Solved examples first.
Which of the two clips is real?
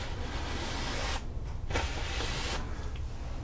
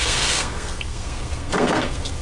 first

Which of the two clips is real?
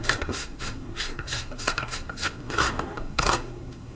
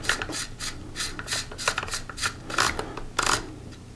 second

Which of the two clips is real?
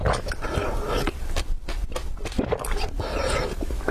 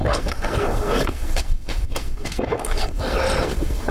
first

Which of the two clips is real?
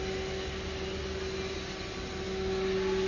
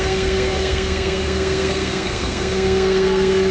first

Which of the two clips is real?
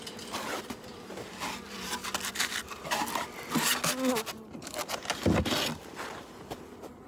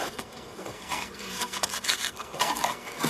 first